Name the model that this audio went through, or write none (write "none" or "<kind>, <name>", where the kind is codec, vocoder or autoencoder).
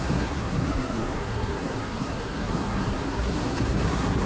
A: codec, SNAC